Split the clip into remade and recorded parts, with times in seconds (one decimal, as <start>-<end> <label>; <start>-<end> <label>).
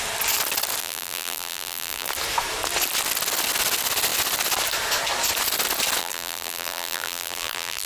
0.0-0.8 recorded; 0.8-2.1 remade; 2.1-6.0 recorded; 6.0-7.9 remade